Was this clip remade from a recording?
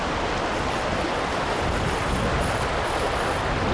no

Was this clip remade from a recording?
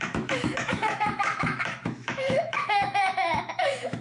yes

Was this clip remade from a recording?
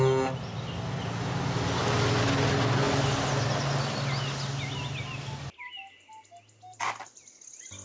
no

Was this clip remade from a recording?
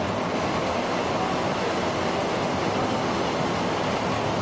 no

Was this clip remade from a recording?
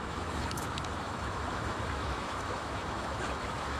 yes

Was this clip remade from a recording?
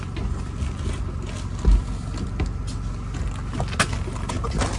no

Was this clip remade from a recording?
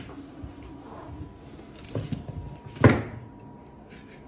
no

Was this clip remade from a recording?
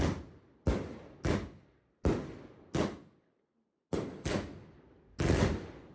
no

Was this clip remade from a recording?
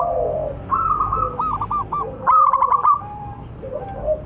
no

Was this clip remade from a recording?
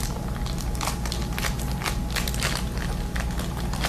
no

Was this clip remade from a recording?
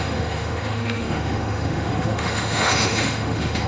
yes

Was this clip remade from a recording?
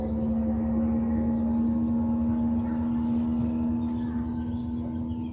no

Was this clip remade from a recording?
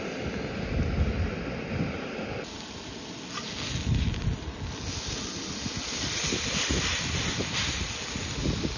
no